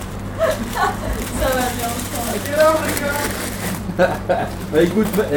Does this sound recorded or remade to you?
remade